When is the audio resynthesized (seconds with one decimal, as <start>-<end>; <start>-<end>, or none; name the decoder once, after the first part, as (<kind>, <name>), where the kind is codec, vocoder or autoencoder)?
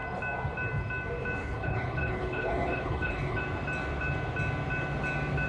1.4-3.4 (codec, HILCodec)